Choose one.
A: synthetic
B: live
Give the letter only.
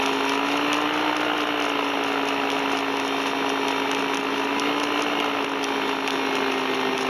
B